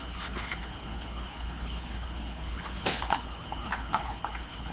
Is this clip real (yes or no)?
no